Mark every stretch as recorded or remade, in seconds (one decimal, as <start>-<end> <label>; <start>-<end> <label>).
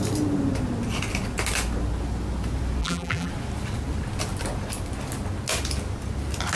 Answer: 0.0-2.8 recorded; 2.8-3.3 remade; 3.3-6.6 recorded